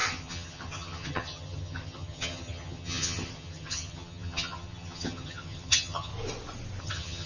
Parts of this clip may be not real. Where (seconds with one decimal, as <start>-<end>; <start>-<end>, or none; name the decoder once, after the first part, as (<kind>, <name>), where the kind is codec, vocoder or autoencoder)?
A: 0.0-6.1 (vocoder, HiFi-GAN); 6.8-7.3